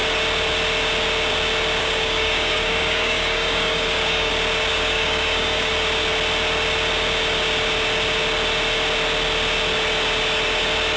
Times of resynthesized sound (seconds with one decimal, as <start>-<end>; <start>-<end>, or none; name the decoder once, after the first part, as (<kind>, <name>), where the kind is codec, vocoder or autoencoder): 1.8-4.3 (codec, DAC); 4.7-5.7

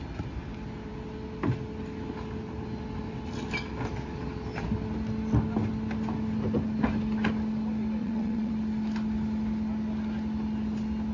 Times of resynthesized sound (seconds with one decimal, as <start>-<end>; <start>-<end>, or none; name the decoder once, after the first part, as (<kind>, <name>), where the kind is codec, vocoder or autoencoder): 8.0-8.5 (vocoder, WaveNeXt)